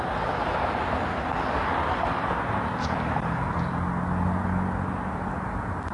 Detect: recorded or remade recorded